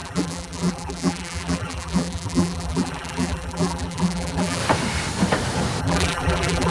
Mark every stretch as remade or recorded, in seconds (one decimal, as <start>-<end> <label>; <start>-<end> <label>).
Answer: 0.0-4.6 remade; 4.6-5.8 recorded; 5.8-6.7 remade